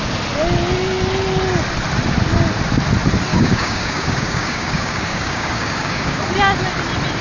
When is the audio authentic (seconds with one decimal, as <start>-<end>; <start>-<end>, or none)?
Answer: 0.0-3.3; 6.2-7.2